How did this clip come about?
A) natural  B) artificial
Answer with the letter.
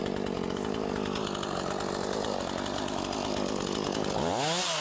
A